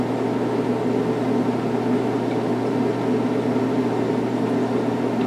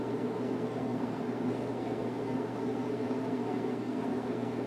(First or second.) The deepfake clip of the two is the second